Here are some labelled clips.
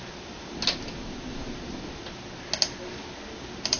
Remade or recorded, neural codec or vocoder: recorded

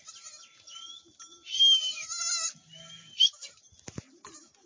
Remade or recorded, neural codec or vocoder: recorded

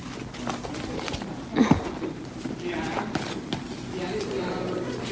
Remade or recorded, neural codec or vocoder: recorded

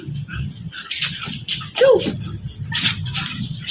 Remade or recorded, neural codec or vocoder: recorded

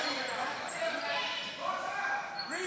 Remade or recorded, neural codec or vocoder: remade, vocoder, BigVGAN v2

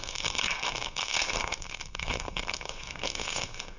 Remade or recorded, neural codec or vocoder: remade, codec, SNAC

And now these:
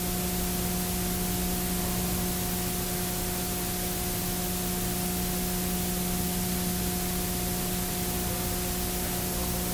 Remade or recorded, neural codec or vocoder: recorded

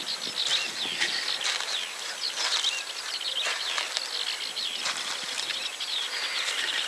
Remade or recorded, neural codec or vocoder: recorded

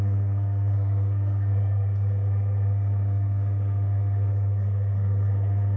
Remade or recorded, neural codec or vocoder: remade, codec, SNAC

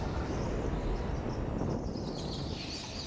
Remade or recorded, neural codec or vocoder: recorded